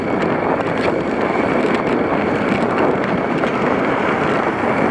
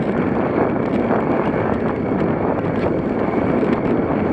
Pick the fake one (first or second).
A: second